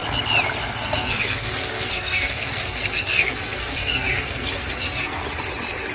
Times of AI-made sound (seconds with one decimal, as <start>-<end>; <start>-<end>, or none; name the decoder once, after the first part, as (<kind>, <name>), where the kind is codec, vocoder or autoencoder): 0.8-5.2 (codec, SNAC)